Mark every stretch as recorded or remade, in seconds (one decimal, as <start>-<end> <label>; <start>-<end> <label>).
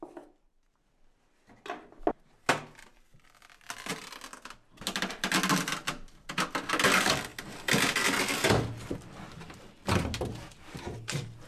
0.0-11.5 recorded